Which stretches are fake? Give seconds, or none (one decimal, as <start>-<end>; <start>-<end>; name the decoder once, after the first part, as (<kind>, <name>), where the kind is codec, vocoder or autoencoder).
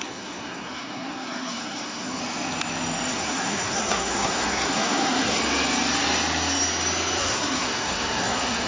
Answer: 0.0-2.2 (codec, SNAC); 3.1-5.4; 7.2-8.7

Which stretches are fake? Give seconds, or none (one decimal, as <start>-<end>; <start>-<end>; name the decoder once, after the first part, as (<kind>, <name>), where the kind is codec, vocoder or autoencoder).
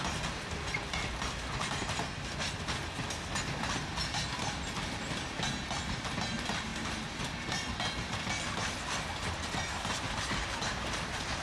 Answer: none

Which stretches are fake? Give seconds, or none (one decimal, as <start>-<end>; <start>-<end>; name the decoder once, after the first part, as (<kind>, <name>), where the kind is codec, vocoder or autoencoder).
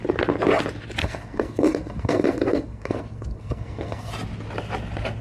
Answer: 1.0-4.1 (codec, SNAC)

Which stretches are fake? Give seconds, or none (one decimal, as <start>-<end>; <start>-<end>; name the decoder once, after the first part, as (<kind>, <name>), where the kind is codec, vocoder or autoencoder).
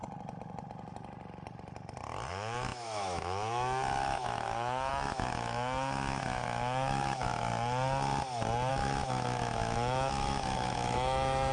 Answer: 2.3-7.5 (autoencoder, DAC-VAE); 8.7-11.5